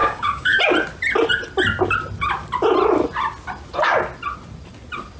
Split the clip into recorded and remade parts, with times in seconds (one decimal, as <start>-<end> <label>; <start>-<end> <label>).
0.0-0.6 remade; 0.6-5.2 recorded